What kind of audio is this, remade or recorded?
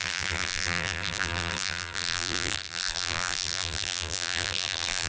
remade